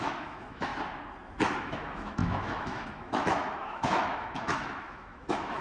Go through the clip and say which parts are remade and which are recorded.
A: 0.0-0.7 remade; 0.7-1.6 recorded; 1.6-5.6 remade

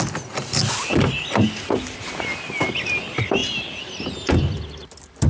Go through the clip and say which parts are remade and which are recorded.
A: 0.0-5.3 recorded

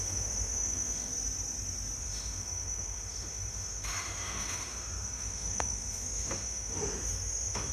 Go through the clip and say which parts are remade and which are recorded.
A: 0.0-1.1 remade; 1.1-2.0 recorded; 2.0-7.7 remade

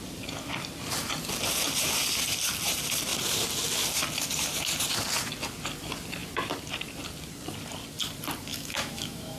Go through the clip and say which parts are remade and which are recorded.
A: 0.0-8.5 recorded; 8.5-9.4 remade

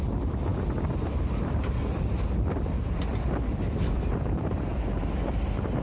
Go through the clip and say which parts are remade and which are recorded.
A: 0.0-5.8 recorded

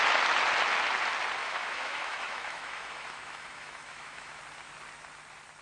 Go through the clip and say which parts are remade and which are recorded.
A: 0.0-1.4 recorded; 1.4-4.4 remade; 4.4-5.6 recorded

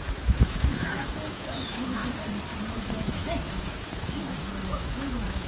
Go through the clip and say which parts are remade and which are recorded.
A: 0.0-2.0 remade; 2.0-2.7 recorded; 2.7-5.5 remade

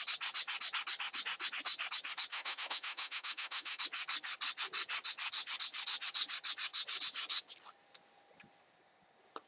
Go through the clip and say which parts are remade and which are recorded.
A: 0.0-2.3 recorded; 2.3-3.8 remade; 3.8-9.5 recorded